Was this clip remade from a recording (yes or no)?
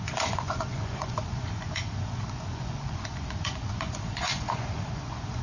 yes